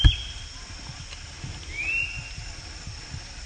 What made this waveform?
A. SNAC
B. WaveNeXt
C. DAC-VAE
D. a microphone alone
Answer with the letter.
D